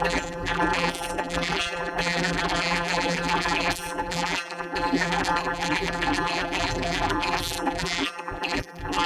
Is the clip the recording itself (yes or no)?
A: no